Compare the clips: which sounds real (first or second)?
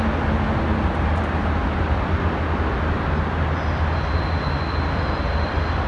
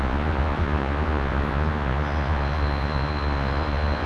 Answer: first